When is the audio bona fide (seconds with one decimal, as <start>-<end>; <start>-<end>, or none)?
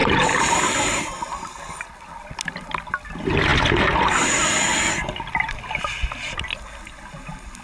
1.0-7.6